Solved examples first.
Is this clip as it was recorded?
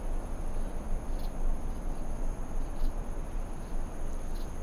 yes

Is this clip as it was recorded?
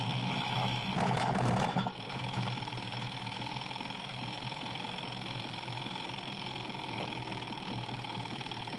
no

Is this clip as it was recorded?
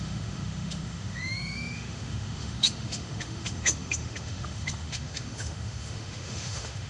no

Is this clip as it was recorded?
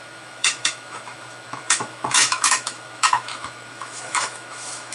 no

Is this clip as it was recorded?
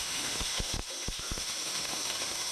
no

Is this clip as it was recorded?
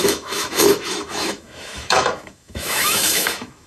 no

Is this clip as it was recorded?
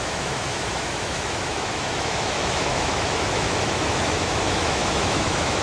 no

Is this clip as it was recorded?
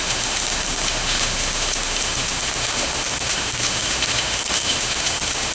no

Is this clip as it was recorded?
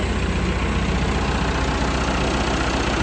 yes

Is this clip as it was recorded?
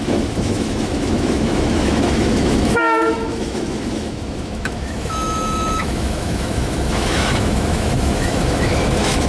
no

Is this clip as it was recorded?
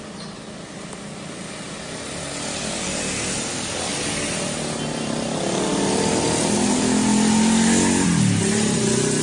yes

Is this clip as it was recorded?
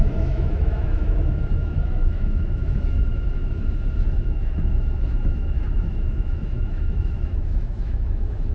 no